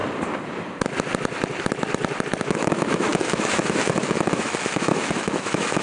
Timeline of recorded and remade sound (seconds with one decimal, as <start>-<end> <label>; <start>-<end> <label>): 0.0-2.4 recorded; 2.4-5.8 remade